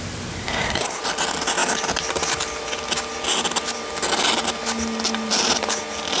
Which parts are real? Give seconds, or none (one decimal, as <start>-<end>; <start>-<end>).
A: 0.0-0.4; 1.0-6.2